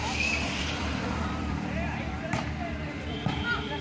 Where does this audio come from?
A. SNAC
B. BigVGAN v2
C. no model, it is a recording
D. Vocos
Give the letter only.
B